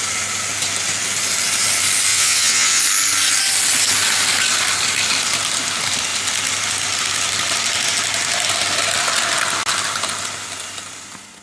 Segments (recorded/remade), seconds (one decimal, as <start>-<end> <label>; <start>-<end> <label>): 0.0-2.1 recorded; 2.1-2.8 remade; 2.8-11.4 recorded